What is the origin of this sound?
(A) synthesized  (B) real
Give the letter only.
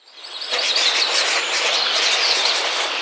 B